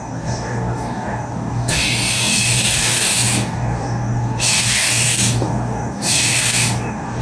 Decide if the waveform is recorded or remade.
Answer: remade